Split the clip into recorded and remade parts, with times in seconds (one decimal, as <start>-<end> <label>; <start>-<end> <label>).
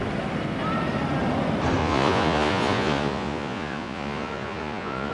0.0-1.8 recorded; 1.8-5.1 remade